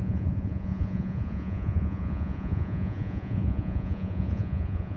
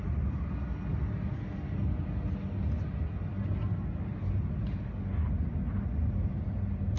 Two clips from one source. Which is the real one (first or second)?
second